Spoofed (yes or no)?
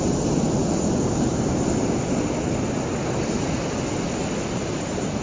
no